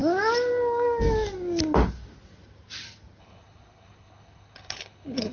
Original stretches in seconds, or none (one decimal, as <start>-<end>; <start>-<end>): 0.0-3.2